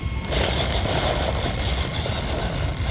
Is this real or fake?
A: real